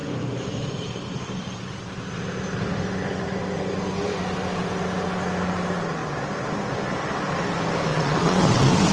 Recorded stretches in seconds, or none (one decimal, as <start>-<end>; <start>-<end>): 0.0-7.9